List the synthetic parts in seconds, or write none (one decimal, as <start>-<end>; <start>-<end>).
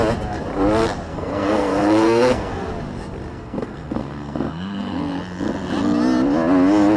1.1-2.7; 3.3-5.0